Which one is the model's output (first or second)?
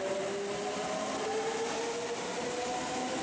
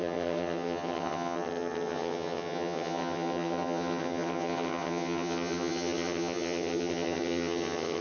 second